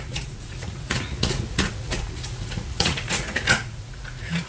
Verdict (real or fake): fake